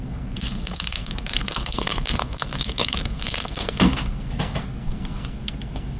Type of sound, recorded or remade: remade